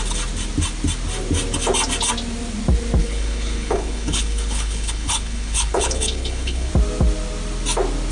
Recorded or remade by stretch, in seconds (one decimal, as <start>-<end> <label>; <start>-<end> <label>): 0.0-3.0 recorded; 3.0-6.7 remade; 6.7-8.1 recorded